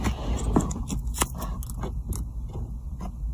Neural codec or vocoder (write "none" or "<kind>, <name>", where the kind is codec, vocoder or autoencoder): none